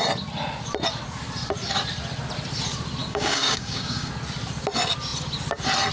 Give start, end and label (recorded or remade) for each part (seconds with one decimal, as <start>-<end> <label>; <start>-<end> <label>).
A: 0.0-3.0 recorded; 3.0-4.1 remade; 4.1-5.9 recorded